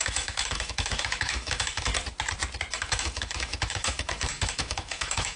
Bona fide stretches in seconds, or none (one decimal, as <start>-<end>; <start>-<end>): 1.9-2.7